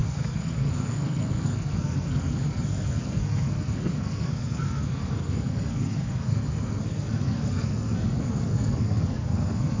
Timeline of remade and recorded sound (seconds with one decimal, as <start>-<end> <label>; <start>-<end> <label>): 0.0-9.8 remade